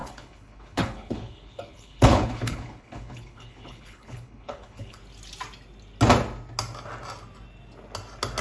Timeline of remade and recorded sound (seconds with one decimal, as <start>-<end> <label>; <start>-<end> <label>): 0.0-5.0 remade; 5.0-8.4 recorded